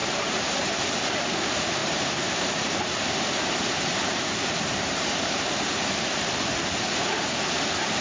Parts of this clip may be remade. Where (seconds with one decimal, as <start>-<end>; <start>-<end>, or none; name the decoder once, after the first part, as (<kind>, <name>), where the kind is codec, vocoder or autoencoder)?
0.0-0.7 (vocoder, BigVGAN v2); 1.8-6.4